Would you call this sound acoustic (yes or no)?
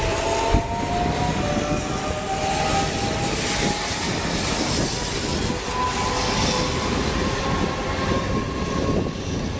yes